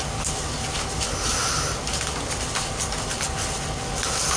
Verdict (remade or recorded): recorded